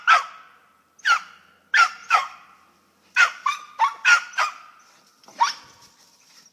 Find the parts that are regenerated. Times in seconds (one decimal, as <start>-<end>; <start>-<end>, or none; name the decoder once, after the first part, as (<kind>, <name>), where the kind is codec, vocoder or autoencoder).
2.0-4.4 (vocoder, BigVGAN v2)